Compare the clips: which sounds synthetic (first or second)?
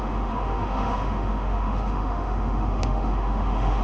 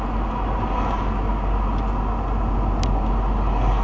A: first